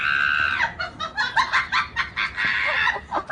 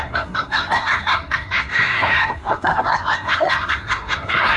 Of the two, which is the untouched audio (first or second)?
first